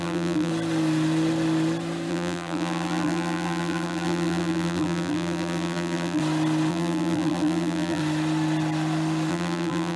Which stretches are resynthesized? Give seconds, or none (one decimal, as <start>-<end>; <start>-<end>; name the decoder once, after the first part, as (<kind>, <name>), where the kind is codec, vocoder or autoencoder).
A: 0.0-0.5 (vocoder, BigVGAN v2); 2.1-6.2; 6.7-8.0; 9.3-10.0